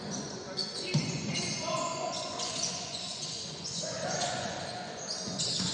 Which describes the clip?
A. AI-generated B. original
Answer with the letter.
A